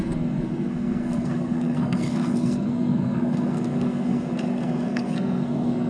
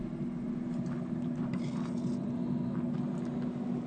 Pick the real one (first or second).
second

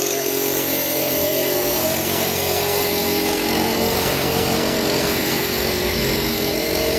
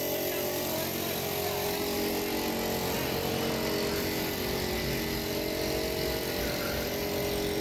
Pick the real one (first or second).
second